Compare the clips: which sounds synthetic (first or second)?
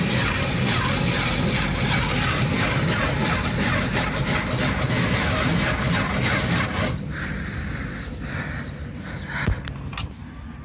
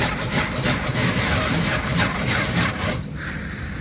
second